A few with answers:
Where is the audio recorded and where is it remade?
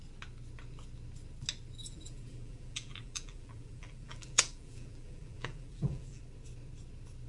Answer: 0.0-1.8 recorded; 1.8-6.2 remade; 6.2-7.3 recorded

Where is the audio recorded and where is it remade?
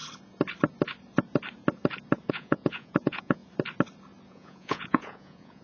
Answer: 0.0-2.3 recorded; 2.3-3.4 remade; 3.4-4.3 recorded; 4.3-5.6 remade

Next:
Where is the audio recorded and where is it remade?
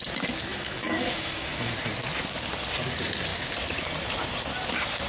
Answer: 0.0-0.5 recorded; 0.5-1.7 remade; 1.7-5.1 recorded